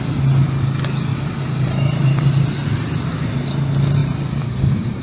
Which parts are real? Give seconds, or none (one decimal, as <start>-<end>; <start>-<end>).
0.0-1.1; 3.0-4.0